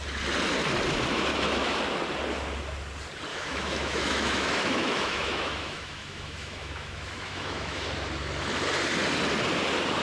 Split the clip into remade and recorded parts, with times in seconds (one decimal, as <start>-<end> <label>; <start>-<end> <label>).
0.0-1.3 recorded; 1.3-1.8 remade; 1.8-3.3 recorded; 3.3-7.9 remade; 7.9-10.0 recorded